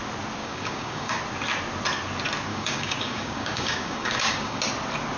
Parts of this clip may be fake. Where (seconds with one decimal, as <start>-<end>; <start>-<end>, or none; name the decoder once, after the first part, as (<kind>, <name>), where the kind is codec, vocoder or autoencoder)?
0.4-1.2 (codec, DAC); 2.5-4.6